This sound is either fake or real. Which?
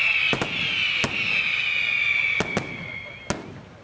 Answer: real